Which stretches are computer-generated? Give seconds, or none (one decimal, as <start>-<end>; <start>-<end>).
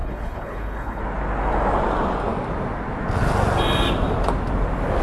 0.0-1.0